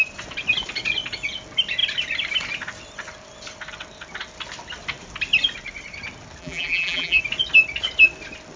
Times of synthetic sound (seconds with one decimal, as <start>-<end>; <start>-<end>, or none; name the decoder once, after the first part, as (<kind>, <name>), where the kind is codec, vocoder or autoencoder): 6.4-7.2 (vocoder, BigVGAN v2)